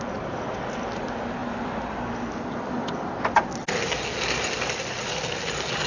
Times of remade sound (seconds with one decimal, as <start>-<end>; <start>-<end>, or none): none